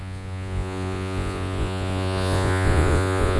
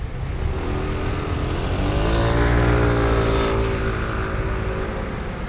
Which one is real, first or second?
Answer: second